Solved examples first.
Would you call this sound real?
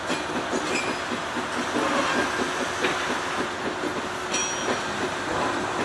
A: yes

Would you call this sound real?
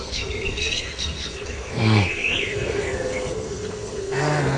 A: no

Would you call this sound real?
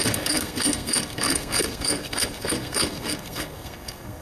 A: no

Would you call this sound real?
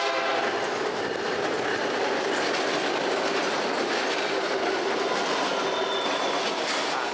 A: yes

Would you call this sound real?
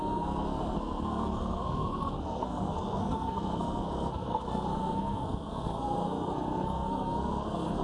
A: no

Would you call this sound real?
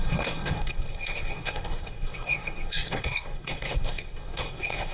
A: no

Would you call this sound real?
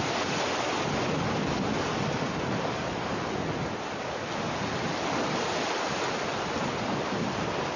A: yes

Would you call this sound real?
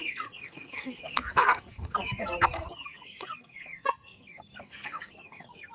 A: no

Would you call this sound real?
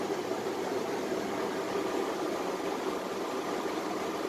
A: yes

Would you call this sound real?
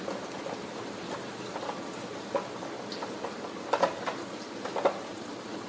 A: yes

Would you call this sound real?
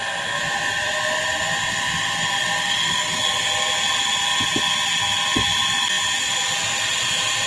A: yes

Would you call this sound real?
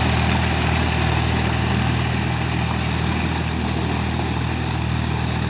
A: yes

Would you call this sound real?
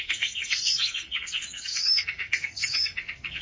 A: no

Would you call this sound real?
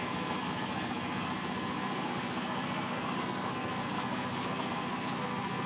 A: no